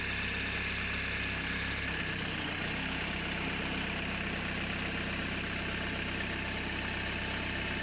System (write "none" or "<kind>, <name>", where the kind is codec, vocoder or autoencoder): none